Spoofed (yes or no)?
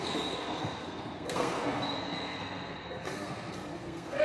yes